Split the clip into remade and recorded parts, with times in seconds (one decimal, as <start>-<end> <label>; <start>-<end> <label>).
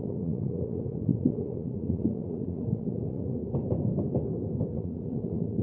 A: 0.0-3.4 remade; 3.4-4.7 recorded; 4.7-5.6 remade